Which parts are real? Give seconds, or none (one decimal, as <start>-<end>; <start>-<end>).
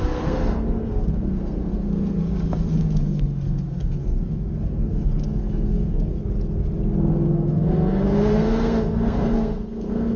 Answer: 6.2-7.1